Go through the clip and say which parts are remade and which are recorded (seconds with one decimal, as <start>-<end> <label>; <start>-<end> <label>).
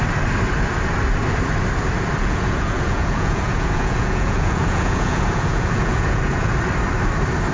0.0-2.2 recorded; 2.2-6.5 remade; 6.5-7.5 recorded